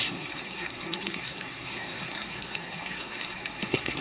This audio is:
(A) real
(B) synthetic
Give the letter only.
B